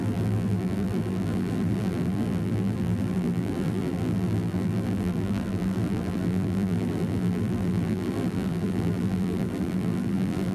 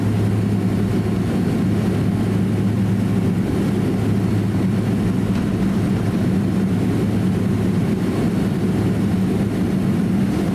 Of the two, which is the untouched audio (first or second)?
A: second